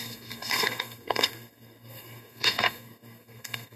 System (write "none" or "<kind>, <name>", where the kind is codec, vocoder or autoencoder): codec, SNAC